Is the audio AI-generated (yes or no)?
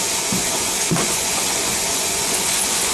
yes